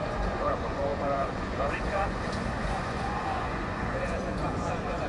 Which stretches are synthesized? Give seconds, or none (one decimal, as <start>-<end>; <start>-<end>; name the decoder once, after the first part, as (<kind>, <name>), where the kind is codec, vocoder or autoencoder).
0.0-5.1 (vocoder, Vocos)